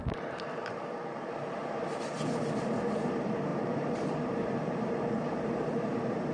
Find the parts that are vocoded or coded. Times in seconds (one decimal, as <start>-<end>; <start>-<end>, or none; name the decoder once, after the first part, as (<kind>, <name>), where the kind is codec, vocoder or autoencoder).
0.0-1.6 (vocoder, BigVGAN v2); 2.5-6.3